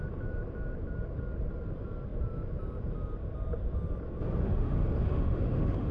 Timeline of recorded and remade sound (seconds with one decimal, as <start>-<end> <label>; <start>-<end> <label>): 0.0-4.4 recorded; 4.4-5.9 remade